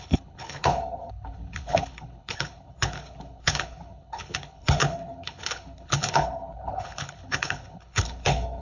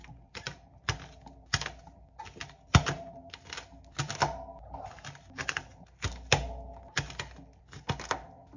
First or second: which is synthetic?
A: first